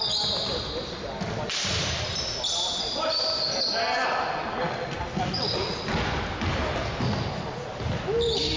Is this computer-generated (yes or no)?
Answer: no